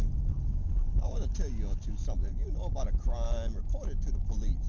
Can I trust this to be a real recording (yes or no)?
yes